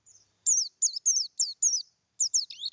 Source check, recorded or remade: recorded